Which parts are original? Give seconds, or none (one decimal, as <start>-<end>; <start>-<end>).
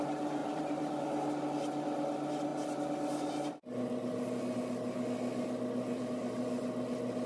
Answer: 0.0-0.4; 1.3-7.3